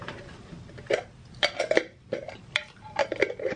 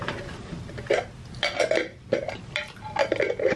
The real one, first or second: second